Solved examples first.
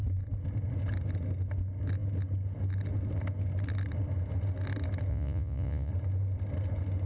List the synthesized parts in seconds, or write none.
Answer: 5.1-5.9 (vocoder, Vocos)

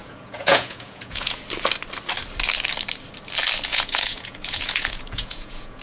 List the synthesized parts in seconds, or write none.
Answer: 0.0-1.4 (vocoder, Vocos); 3.7-5.8

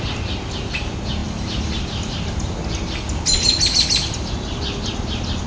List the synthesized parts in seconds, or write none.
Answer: none

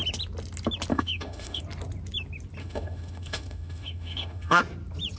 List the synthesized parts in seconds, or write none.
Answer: 0.9-1.6 (autoencoder, DAC-VAE); 2.6-4.6

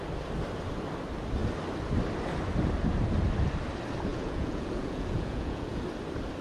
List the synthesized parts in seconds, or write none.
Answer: 4.1-5.8 (vocoder, Vocos)